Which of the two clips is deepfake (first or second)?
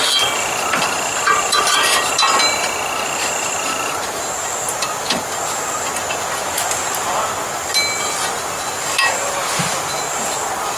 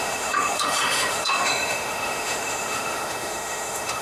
second